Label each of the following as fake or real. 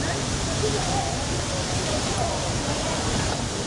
fake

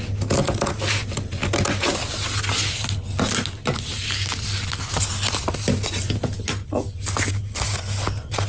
real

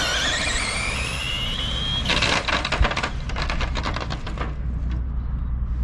real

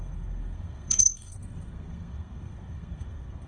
fake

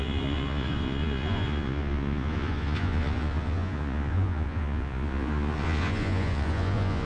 fake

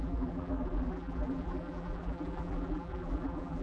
fake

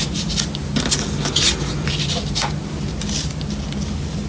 real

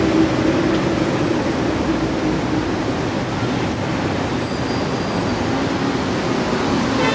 real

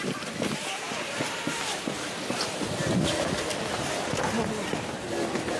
real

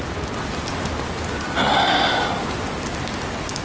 real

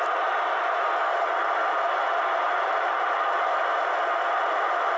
real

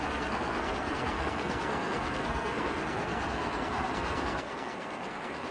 fake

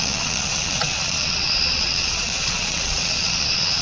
fake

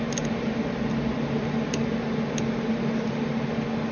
real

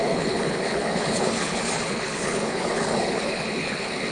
fake